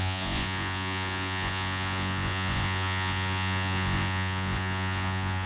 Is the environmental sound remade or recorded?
remade